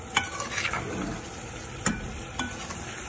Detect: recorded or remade recorded